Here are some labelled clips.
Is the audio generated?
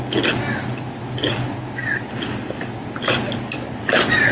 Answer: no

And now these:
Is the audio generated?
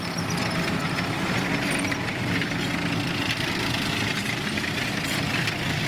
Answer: no